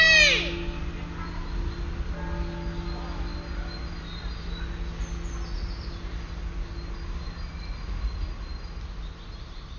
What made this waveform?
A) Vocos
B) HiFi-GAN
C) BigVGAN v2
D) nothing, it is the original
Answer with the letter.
D